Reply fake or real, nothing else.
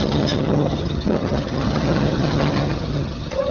fake